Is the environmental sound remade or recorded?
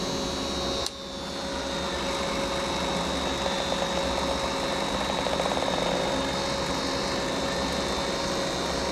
recorded